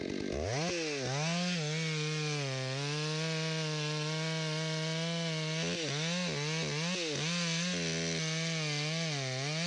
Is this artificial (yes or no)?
no